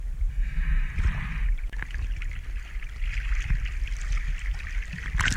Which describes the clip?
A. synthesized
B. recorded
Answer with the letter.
B